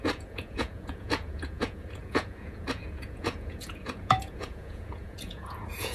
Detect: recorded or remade remade